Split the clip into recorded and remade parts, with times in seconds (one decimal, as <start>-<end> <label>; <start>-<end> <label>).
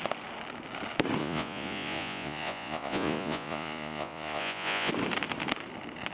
0.0-1.2 recorded; 1.2-4.9 remade; 4.9-6.1 recorded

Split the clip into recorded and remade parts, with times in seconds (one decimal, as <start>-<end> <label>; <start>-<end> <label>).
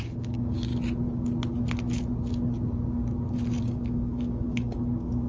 0.0-0.7 remade; 0.7-3.6 recorded; 3.6-5.3 remade